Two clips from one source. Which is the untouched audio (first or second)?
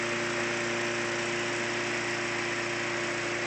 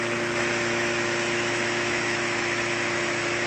first